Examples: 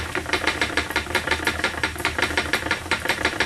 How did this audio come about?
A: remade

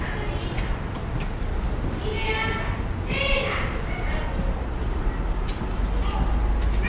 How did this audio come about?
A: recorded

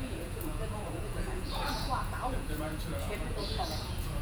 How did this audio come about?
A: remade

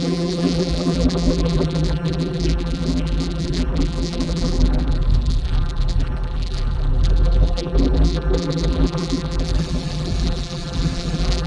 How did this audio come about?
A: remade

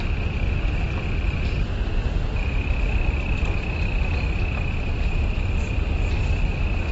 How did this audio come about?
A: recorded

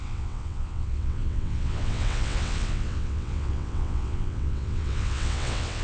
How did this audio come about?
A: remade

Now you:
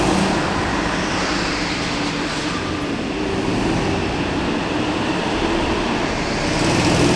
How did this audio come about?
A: recorded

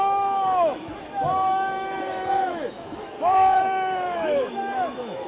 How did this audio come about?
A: remade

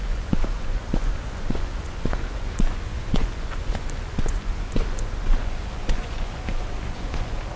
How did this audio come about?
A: remade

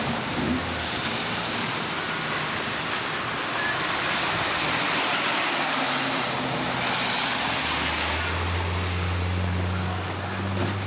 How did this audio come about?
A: recorded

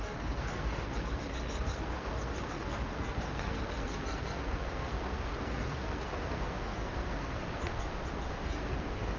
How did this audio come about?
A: remade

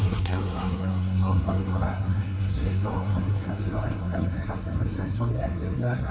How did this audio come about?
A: remade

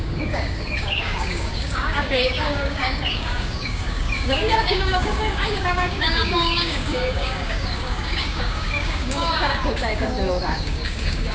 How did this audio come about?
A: remade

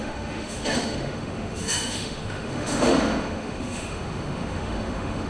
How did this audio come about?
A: remade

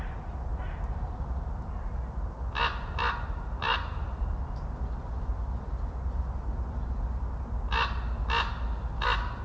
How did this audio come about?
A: recorded